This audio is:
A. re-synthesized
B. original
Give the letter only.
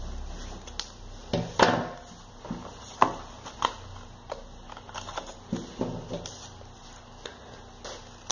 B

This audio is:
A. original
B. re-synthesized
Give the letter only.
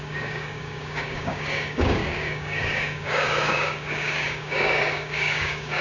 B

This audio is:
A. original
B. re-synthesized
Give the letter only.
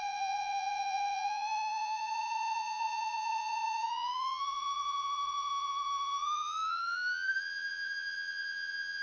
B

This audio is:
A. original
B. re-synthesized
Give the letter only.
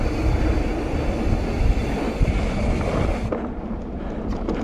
B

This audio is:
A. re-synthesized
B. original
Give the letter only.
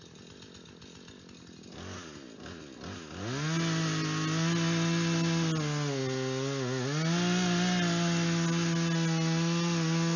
B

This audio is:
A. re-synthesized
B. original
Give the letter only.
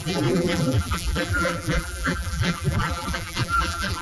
A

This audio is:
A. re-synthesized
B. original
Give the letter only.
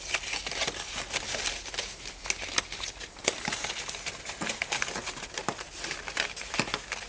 B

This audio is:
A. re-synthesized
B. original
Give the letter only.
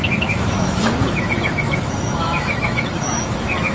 A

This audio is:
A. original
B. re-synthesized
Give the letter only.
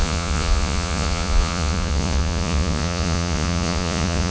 B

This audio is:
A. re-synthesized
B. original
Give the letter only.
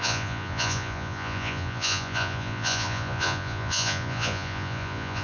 A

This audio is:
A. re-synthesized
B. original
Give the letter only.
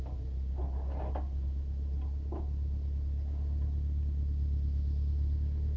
B